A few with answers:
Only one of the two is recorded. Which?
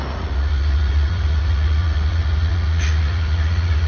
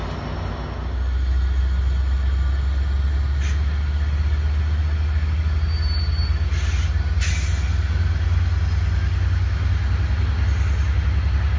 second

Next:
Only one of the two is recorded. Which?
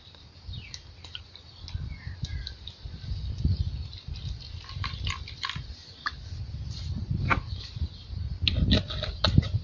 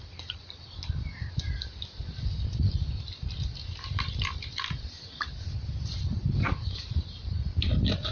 first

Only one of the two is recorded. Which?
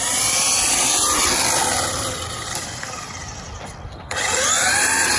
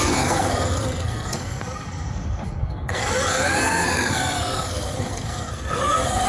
first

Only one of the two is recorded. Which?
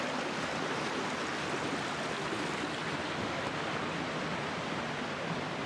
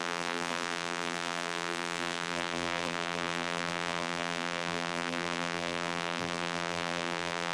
first